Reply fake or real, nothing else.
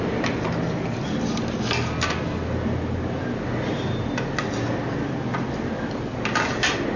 real